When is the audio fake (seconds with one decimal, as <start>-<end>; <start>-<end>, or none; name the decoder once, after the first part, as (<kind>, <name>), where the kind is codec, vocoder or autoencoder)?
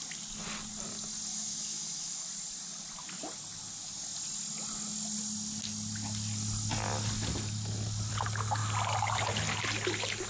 1.3-2.3 (autoencoder, DAC-VAE)